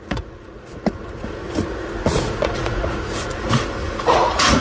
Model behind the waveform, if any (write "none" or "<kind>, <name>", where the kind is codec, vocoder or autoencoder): vocoder, Vocos